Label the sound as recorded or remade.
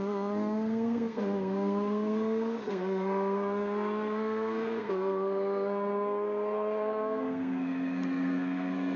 remade